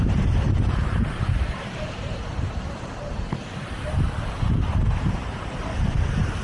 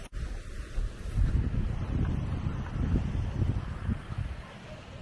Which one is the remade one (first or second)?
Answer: first